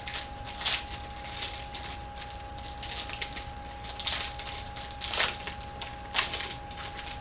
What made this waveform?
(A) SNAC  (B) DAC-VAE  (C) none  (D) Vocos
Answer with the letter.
C